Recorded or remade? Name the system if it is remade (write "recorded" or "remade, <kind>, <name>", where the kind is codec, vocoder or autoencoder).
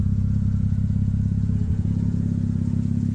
remade, vocoder, Vocos